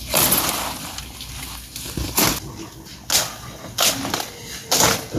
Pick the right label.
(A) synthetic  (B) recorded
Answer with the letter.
B